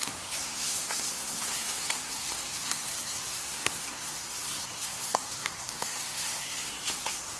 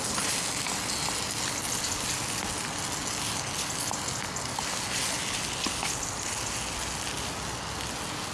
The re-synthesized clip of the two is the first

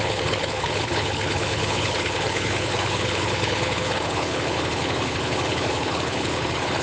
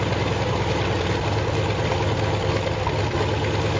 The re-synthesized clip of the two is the first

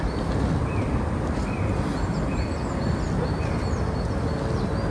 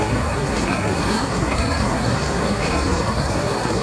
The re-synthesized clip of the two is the second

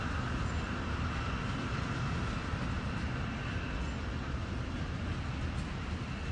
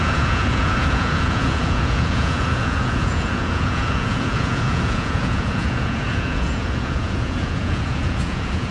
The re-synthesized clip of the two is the second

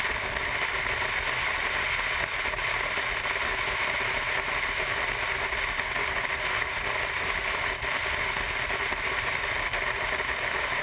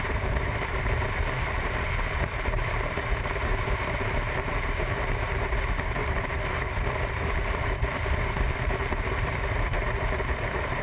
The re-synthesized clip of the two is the second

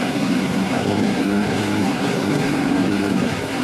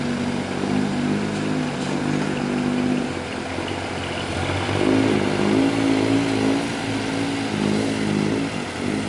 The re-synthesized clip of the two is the first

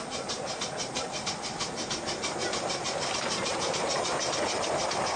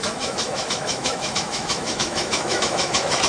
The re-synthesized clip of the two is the second